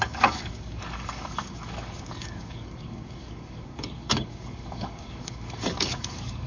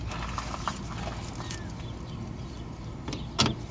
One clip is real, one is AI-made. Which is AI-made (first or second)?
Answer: first